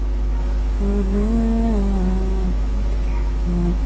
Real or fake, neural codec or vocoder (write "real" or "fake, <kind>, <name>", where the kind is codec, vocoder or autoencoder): fake, autoencoder, DAC-VAE